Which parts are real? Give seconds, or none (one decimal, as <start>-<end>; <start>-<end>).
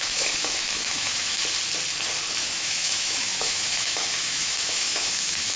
1.4-2.4